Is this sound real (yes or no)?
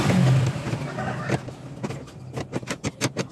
yes